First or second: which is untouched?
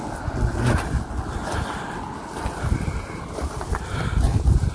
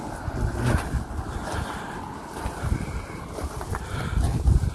first